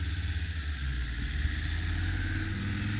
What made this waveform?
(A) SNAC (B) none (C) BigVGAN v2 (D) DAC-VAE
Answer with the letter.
B